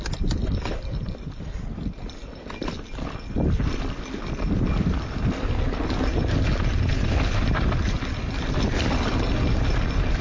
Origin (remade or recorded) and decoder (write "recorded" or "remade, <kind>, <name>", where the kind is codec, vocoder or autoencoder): recorded